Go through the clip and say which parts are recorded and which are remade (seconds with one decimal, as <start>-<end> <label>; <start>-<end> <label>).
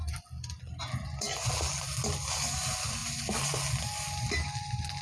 0.0-0.6 remade; 0.6-1.7 recorded; 1.7-2.5 remade; 2.5-3.0 recorded; 3.0-3.8 remade; 3.8-5.0 recorded